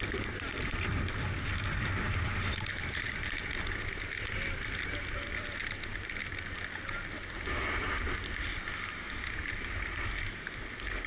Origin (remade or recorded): recorded